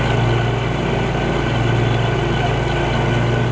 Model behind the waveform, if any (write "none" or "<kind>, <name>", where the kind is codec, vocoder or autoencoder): none